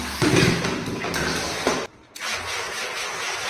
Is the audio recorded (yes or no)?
yes